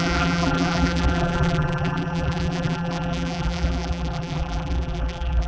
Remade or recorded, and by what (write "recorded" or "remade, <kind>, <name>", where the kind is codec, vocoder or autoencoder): remade, vocoder, BigVGAN v2